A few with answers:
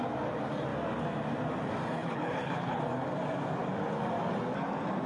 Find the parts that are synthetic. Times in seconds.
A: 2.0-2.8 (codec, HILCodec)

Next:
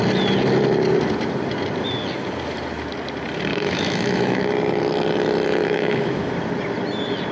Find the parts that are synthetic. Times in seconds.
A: 3.5-4.4 (autoencoder, DAC-VAE); 5.6-6.3